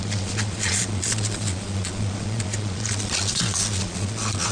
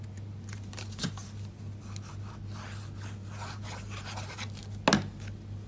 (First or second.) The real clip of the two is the second